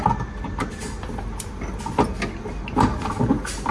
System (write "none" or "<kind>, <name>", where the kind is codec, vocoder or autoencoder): none